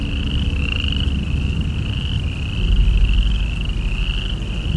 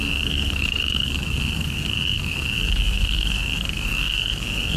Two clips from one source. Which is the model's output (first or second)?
second